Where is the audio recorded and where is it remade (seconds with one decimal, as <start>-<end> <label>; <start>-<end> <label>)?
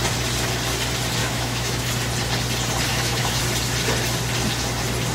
0.0-1.2 recorded; 1.2-1.9 remade; 1.9-2.9 recorded; 2.9-3.4 remade; 3.4-5.1 recorded